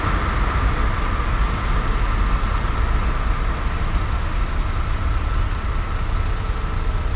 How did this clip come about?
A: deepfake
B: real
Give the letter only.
B